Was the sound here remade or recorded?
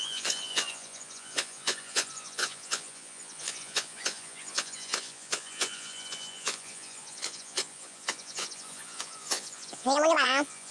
remade